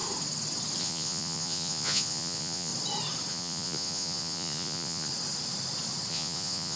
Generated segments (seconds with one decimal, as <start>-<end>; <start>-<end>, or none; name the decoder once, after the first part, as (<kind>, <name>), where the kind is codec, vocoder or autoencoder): 0.8-2.7 (vocoder, Vocos); 3.3-5.1; 6.1-6.8